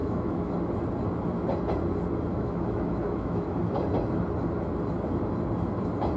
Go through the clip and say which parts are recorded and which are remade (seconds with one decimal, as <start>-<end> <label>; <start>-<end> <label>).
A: 0.0-0.5 remade; 0.5-2.3 recorded; 2.3-3.6 remade; 3.6-6.2 recorded